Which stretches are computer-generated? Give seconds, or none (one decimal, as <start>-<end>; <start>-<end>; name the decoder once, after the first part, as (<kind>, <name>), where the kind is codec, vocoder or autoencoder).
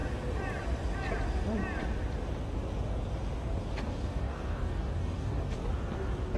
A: 3.8-5.6 (codec, DAC)